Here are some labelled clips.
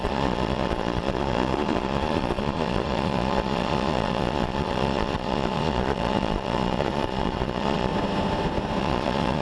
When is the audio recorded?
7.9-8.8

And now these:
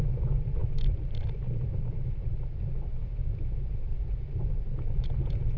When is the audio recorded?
0.6-2.9; 3.9-5.0

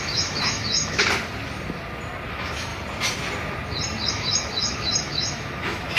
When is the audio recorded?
1.0-2.3; 2.7-4.1

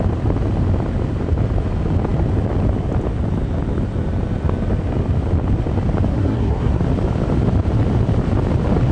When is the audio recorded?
0.0-6.1; 6.8-8.9

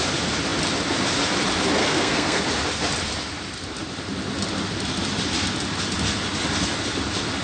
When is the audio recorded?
0.0-1.8; 2.4-7.4